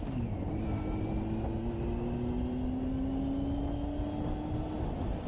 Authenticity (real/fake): real